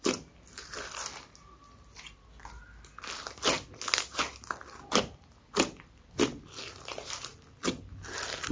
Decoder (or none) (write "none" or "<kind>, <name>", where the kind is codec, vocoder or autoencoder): none